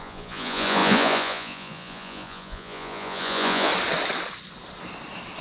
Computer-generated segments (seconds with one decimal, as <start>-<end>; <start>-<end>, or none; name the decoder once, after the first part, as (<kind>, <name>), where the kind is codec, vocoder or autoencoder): 0.0-3.7 (vocoder, Vocos)